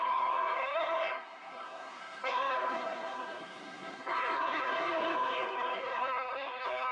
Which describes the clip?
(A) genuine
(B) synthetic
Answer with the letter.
B